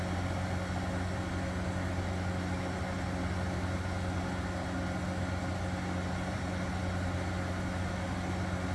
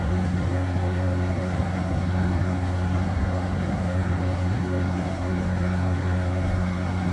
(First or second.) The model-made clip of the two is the second